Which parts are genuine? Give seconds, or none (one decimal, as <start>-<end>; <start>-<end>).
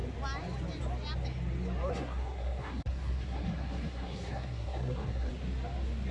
0.0-1.9; 5.3-6.1